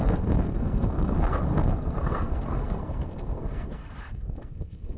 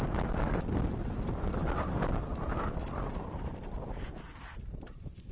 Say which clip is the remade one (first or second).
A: first